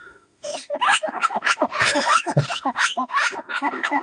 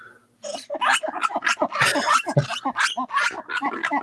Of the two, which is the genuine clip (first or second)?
second